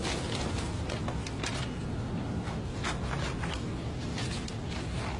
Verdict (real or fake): real